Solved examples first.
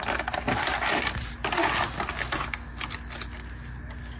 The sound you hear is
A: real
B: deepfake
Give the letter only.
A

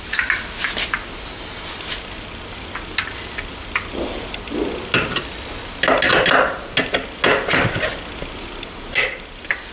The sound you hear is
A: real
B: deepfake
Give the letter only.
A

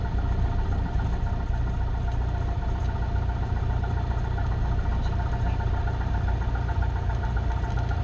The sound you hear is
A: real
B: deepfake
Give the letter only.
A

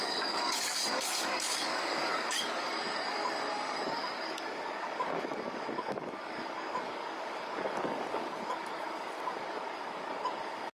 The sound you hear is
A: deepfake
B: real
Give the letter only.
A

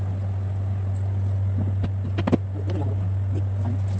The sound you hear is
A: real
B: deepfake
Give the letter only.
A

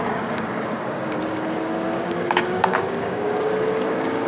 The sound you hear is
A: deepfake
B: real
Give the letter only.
A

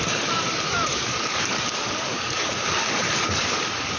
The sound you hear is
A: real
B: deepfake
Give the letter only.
B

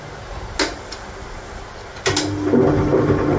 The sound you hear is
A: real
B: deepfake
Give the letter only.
A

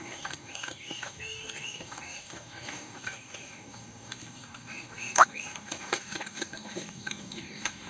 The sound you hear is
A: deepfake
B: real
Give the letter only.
A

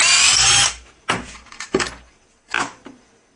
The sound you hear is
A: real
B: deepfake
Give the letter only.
A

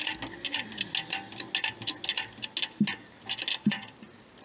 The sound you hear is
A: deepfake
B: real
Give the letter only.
B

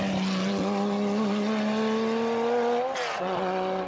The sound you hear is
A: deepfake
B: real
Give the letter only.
B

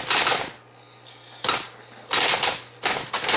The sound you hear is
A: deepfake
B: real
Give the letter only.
B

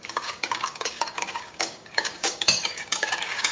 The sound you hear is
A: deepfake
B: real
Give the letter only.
A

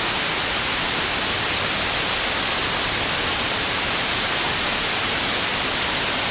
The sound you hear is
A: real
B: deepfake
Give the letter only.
A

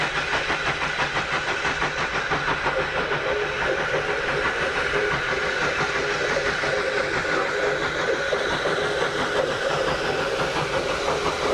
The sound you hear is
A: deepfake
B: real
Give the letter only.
B